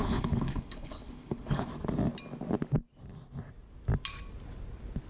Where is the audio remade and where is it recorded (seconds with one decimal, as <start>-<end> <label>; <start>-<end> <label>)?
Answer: 0.0-1.7 remade; 1.7-5.1 recorded